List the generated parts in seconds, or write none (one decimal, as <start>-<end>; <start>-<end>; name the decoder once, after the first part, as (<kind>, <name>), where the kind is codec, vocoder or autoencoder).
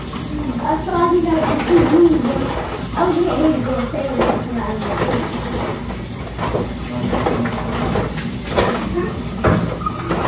none